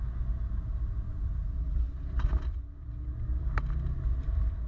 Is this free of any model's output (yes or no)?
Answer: yes